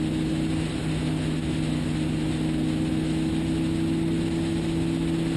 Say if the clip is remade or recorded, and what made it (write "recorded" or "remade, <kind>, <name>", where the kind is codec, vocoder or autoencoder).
recorded